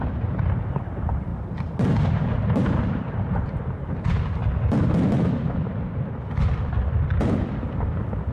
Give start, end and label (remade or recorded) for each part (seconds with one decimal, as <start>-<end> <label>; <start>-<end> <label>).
0.0-1.3 remade; 1.3-2.3 recorded; 2.3-4.4 remade; 4.4-8.3 recorded